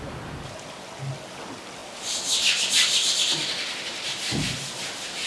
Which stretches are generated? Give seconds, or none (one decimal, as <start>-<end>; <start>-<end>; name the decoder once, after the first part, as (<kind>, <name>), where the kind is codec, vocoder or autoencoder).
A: none